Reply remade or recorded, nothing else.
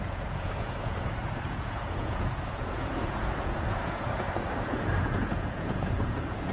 remade